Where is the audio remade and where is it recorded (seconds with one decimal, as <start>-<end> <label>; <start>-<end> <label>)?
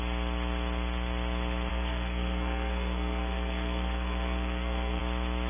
0.0-1.7 recorded; 1.7-5.0 remade; 5.0-5.5 recorded